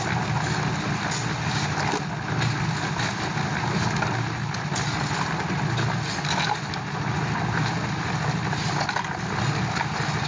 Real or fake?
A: real